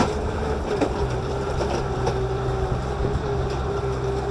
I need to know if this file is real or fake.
fake